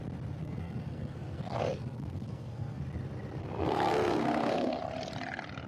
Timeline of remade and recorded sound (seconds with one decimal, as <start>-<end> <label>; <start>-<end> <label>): 0.0-0.4 recorded; 0.4-2.8 remade; 2.8-3.4 recorded; 3.4-4.8 remade; 4.8-5.7 recorded